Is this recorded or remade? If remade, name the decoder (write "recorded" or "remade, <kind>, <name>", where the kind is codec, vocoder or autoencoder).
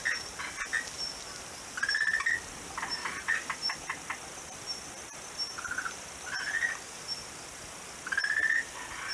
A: recorded